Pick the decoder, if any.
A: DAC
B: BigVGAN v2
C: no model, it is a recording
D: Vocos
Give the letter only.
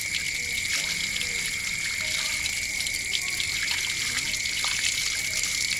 C